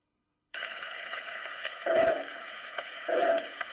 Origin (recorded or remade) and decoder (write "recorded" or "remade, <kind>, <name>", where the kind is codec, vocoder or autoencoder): remade, codec, HILCodec